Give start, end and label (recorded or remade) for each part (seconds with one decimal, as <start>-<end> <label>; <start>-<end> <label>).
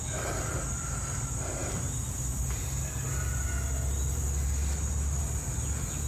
0.0-6.1 recorded